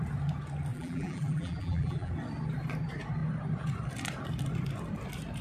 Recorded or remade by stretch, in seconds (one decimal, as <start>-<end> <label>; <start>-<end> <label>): 0.0-0.7 recorded; 0.7-2.1 remade; 2.1-5.4 recorded